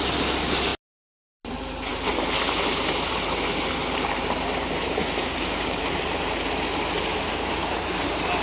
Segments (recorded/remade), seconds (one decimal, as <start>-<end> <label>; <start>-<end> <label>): 0.0-5.0 recorded; 5.0-5.8 remade; 5.8-8.4 recorded

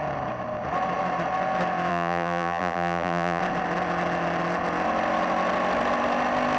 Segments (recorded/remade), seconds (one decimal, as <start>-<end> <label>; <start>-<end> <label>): 0.0-1.9 recorded; 1.9-3.4 remade; 3.4-6.6 recorded